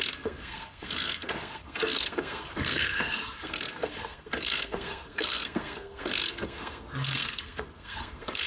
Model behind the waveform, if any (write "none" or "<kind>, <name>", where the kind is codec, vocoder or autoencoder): codec, SNAC